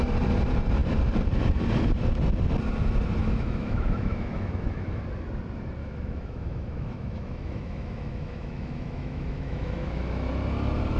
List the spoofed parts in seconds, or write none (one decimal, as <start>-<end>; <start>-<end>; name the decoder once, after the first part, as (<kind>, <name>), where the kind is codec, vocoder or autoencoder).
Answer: 3.2-5.0 (autoencoder, DAC-VAE); 5.8-10.3

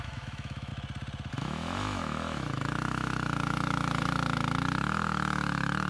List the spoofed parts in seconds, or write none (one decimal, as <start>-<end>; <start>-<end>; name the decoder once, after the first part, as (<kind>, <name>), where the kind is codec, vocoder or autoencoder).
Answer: 0.0-0.7 (autoencoder, DAC-VAE); 1.3-5.9